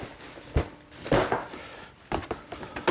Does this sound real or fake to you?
real